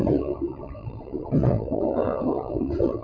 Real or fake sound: fake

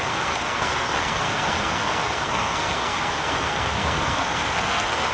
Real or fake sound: fake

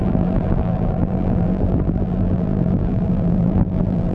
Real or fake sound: fake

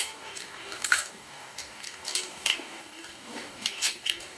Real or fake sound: fake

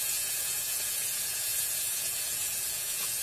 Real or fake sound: fake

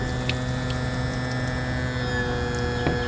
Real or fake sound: real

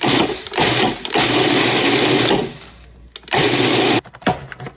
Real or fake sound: real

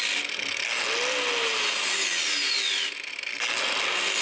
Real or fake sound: real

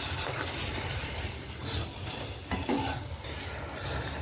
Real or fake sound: real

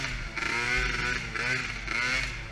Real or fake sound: real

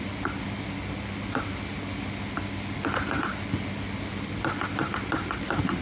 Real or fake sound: real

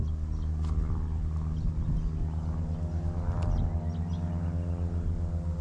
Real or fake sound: real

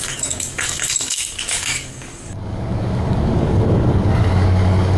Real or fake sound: fake